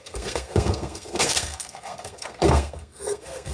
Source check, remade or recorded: remade